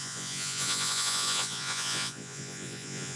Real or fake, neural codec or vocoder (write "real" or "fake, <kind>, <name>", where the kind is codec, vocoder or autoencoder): fake, vocoder, Vocos